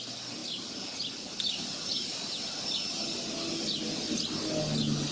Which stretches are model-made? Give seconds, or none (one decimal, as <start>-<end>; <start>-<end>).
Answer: none

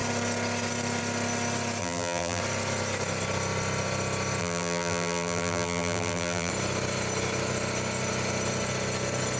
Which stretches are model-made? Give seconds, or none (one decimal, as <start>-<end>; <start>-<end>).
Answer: 1.8-2.4; 4.4-6.5

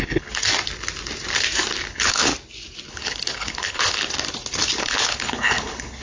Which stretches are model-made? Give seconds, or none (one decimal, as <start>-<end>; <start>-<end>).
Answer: 0.0-0.5; 1.9-2.3; 2.9-4.0; 4.8-6.0

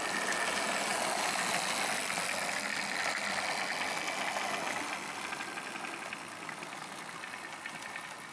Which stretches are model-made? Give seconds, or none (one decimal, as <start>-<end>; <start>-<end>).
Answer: none

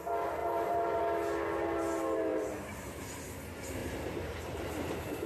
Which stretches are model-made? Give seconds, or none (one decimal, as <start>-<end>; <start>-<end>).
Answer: 0.4-1.0; 2.3-3.2; 3.8-5.3

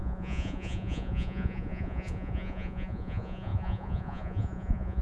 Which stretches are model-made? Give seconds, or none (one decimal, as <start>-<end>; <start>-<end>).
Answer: 0.0-5.0

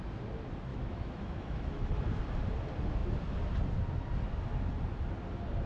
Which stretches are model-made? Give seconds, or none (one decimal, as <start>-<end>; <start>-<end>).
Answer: 0.7-1.9

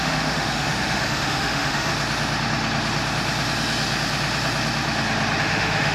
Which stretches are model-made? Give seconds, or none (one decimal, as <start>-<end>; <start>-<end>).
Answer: 0.0-1.9; 5.4-5.9